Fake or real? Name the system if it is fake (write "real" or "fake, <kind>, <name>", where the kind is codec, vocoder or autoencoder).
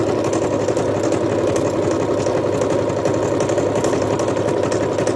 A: real